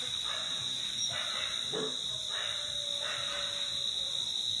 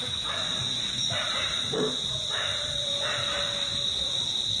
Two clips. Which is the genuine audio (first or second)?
first